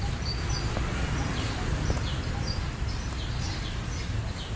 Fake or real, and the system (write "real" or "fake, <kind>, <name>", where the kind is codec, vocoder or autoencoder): real